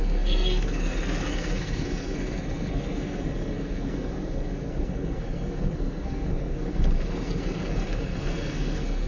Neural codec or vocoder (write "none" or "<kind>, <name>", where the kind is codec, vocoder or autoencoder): codec, SNAC